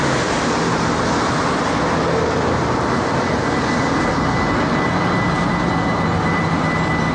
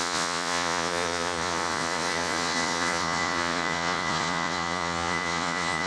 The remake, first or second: second